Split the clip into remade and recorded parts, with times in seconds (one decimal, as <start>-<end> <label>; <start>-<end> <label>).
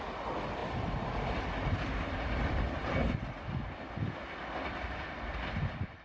0.0-6.0 recorded